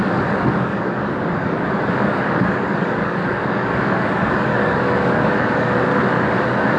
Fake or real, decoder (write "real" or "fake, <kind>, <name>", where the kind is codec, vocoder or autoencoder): fake, codec, DAC